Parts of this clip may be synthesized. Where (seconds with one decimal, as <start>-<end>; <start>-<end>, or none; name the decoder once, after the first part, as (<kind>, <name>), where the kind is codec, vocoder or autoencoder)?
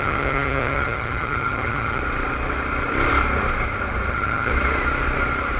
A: 0.0-2.0 (vocoder, HiFi-GAN); 4.1-4.5